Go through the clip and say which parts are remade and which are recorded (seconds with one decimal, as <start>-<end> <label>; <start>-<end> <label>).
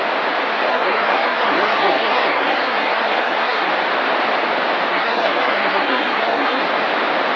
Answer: 0.0-0.7 recorded; 0.7-3.7 remade; 3.7-4.9 recorded; 4.9-6.6 remade; 6.6-7.4 recorded